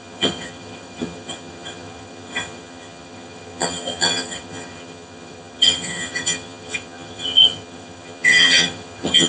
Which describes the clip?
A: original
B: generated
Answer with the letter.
B